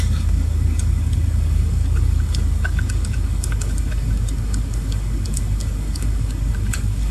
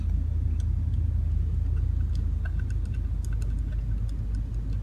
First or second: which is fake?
first